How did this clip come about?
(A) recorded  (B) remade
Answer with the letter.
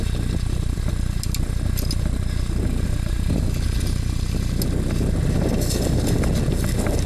A